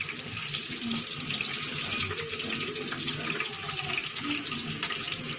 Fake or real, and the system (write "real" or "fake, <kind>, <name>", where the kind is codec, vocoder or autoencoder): fake, vocoder, BigVGAN v2